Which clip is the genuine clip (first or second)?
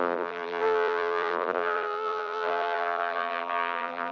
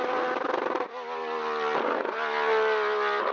second